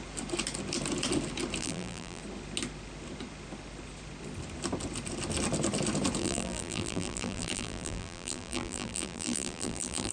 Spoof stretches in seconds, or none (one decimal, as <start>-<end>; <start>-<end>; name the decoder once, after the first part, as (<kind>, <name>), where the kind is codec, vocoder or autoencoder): 1.6-2.2 (vocoder, BigVGAN v2); 6.2-10.1